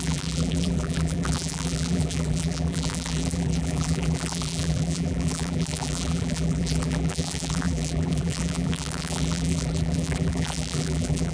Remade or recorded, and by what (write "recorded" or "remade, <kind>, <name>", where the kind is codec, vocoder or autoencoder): remade, vocoder, BigVGAN v2